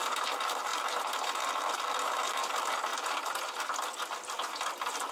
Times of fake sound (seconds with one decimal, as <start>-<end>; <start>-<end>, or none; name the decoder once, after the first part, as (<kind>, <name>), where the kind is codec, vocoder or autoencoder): 0.0-2.9 (vocoder, BigVGAN v2)